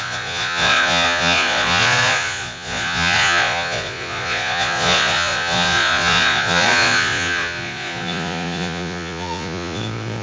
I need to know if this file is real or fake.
fake